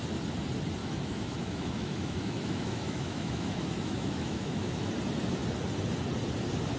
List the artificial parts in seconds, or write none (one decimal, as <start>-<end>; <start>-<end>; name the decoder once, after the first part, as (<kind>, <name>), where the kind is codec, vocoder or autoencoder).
0.8-4.9 (autoencoder, DAC-VAE)